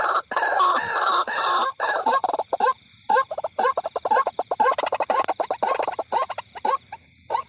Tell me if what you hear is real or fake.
fake